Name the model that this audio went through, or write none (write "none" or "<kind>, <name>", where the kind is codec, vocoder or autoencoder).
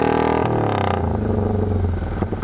none